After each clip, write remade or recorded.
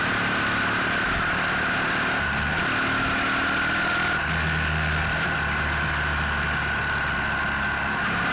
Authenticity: recorded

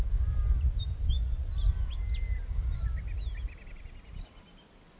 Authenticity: recorded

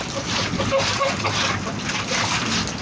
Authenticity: recorded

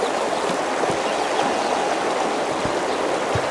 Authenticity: recorded